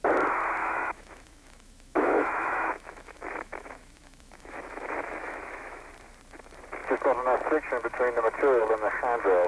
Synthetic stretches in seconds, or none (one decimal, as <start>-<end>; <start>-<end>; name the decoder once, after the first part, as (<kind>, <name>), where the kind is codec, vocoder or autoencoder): 0.6-5.8 (autoencoder, DAC-VAE)